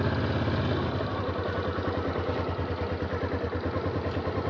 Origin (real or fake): real